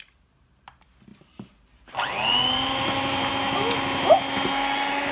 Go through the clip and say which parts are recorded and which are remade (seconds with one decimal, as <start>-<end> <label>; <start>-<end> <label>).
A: 0.0-1.1 recorded; 1.1-3.3 remade; 3.3-5.1 recorded